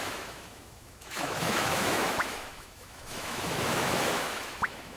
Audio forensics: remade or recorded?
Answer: remade